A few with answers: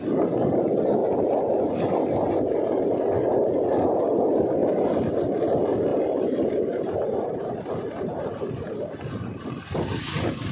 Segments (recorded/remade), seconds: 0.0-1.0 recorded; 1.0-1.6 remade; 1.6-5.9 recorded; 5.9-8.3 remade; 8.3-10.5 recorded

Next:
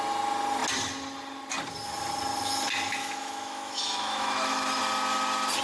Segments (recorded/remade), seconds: 0.0-3.0 recorded; 3.0-4.8 remade; 4.8-5.6 recorded

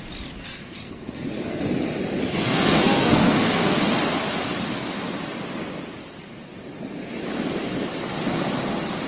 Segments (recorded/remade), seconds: 0.0-0.4 recorded; 0.4-1.6 remade; 1.6-2.3 recorded; 2.3-3.8 remade; 3.8-9.1 recorded

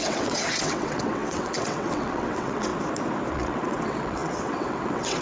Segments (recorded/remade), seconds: 0.0-2.7 remade; 2.7-3.3 recorded; 3.3-5.2 remade